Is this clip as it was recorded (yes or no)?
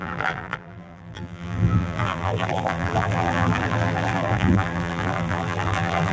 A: no